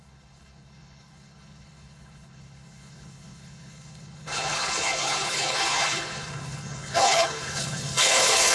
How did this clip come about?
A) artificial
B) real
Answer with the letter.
A